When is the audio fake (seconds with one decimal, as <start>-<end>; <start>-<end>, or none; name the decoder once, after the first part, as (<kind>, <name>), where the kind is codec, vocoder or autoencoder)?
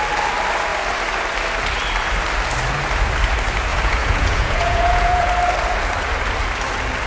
3.7-5.3 (vocoder, Vocos)